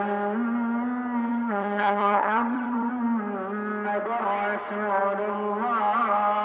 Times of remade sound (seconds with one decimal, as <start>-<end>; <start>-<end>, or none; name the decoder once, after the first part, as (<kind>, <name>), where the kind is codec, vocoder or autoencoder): 1.3-2.9 (vocoder, HiFi-GAN)